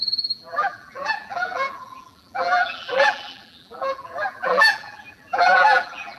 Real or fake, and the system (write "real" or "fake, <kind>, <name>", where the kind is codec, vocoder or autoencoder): fake, vocoder, BigVGAN v2